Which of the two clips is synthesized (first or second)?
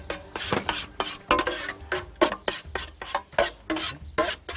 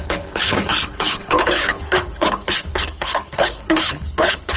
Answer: second